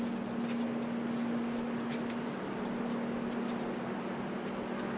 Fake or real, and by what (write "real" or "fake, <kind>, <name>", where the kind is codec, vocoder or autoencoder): real